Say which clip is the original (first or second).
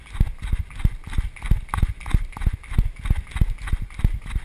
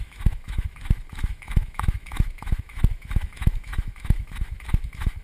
first